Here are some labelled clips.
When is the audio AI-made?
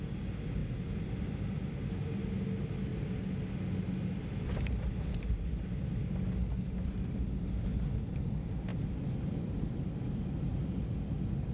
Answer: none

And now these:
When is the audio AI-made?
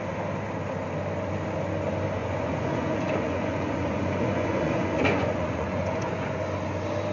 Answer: 2.2-6.4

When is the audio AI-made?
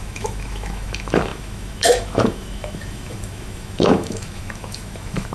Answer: 0.0-5.3